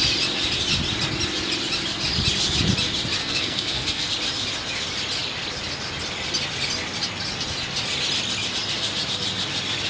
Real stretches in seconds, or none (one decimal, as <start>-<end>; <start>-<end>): 0.0-3.2; 4.1-9.9